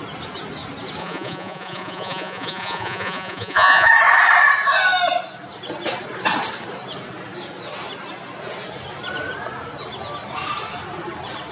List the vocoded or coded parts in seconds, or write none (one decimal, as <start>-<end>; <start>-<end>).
1.0-3.9